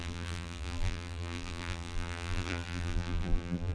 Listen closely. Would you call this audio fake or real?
fake